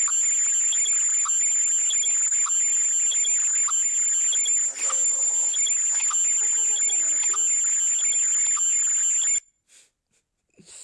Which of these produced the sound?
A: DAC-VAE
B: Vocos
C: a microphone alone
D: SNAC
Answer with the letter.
C